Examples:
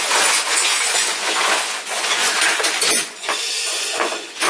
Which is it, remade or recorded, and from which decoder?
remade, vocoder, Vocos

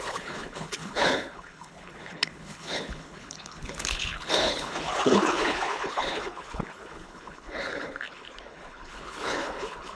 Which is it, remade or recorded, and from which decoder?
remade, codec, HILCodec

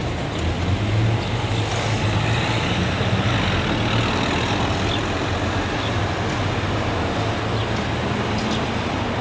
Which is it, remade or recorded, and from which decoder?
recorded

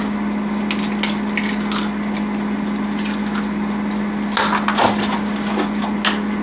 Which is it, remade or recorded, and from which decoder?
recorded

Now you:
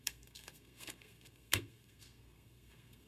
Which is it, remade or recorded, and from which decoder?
remade, codec, SNAC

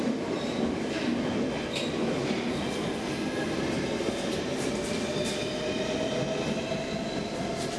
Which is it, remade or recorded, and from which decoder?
recorded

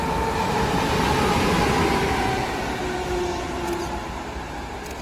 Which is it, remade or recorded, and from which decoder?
recorded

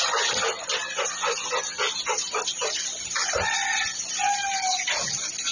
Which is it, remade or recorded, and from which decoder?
recorded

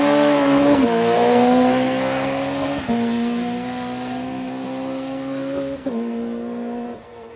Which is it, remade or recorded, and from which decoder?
remade, codec, SNAC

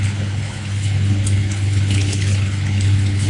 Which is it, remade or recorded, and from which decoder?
remade, codec, HILCodec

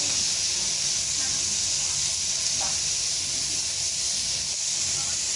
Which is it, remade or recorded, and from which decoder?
recorded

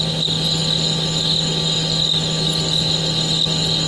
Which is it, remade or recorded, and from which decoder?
recorded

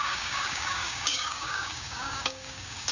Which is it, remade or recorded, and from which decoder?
remade, codec, DAC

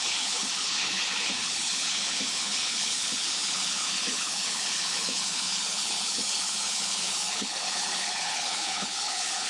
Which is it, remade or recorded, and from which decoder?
remade, codec, HILCodec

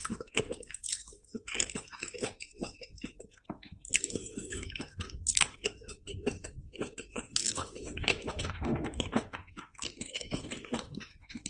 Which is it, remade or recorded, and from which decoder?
remade, autoencoder, DAC-VAE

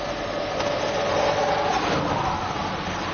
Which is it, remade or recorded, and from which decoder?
recorded